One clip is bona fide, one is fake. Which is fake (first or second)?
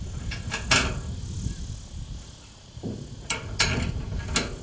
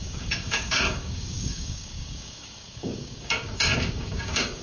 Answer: second